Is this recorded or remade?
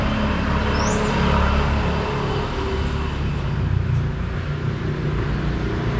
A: recorded